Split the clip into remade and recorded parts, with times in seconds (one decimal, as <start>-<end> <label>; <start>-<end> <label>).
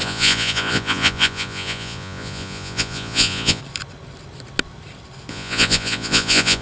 0.0-3.6 remade; 3.6-5.3 recorded; 5.3-6.6 remade